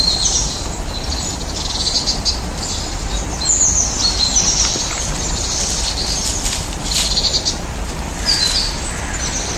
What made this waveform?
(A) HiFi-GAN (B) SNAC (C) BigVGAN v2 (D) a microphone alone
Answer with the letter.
D